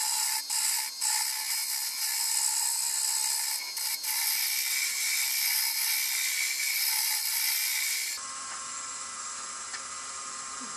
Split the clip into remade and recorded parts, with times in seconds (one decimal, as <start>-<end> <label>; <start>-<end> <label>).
0.0-7.3 recorded; 7.3-10.8 remade